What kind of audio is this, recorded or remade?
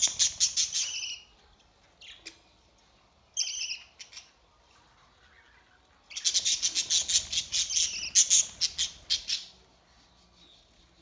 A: recorded